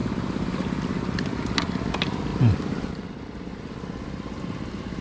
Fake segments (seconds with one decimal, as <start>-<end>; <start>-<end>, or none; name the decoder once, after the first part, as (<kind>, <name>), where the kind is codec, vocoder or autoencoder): none